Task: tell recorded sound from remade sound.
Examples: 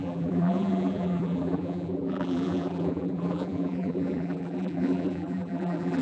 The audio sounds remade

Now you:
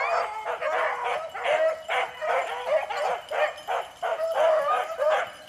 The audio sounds recorded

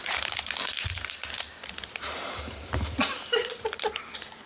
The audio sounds remade